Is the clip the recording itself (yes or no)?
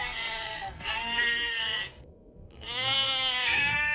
no